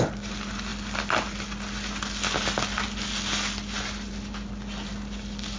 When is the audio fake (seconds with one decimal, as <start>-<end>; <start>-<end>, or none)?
none